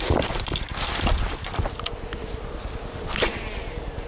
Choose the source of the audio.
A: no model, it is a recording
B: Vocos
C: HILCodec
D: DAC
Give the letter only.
A